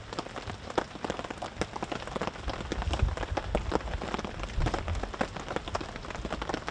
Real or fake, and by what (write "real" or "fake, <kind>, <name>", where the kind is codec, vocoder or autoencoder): real